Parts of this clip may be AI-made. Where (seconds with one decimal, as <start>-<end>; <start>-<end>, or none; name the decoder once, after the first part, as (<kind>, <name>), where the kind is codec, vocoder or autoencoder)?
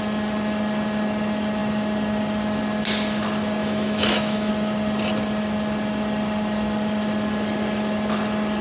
3.6-4.5 (autoencoder, DAC-VAE)